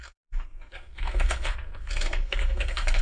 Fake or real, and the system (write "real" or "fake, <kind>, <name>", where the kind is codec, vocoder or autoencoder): fake, codec, SNAC